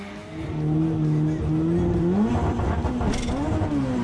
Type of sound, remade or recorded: recorded